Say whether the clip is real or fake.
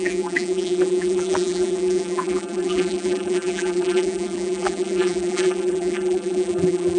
fake